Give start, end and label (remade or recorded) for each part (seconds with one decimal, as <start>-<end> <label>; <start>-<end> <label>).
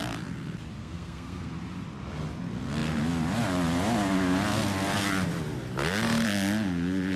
0.0-0.8 recorded; 0.8-1.5 remade; 1.5-7.2 recorded